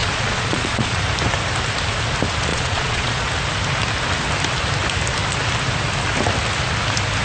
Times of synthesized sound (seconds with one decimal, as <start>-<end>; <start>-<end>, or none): 0.0-1.0; 2.5-3.3